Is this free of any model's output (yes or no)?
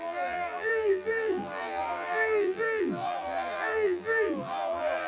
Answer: no